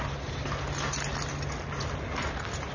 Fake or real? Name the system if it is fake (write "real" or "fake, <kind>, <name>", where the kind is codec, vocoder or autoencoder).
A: real